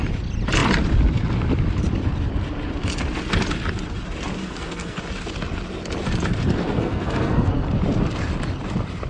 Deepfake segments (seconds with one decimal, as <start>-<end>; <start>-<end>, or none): 4.4-5.0; 6.6-7.5